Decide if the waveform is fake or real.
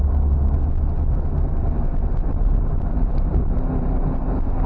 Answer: real